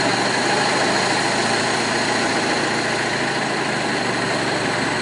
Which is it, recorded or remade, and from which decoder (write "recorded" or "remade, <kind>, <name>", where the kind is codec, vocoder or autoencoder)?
recorded